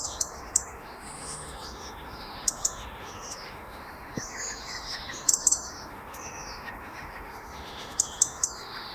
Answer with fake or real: fake